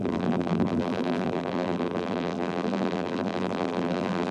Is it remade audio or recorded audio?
remade